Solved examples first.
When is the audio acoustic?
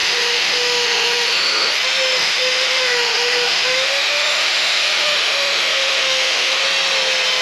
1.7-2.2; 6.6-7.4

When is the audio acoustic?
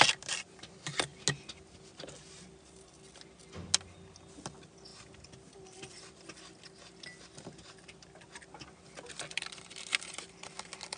0.0-11.0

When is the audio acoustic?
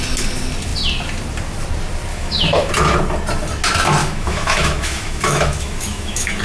0.0-2.1; 2.7-4.0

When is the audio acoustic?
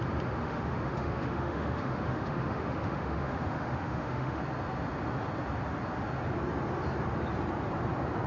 0.0-0.4; 4.4-8.3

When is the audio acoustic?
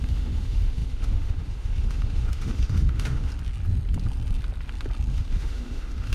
3.3-5.1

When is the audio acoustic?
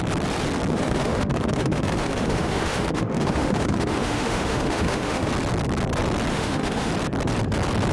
0.0-0.7; 5.3-6.3; 6.9-7.9